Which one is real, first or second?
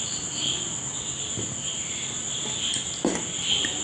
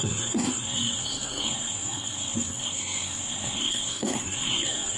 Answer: first